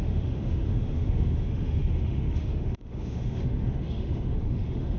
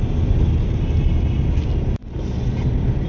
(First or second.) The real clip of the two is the second